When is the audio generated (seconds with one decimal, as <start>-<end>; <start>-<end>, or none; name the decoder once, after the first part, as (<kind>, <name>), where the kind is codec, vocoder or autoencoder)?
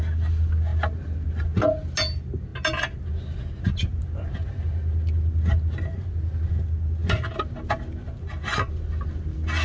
none